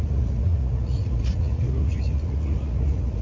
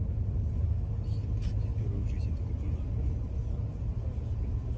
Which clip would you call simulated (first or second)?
first